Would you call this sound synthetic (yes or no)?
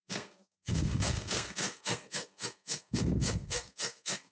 yes